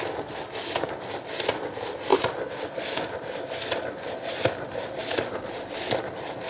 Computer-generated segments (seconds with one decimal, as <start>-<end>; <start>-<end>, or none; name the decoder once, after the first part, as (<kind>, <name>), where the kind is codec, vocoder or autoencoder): none